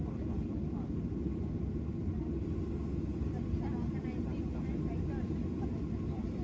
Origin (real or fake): real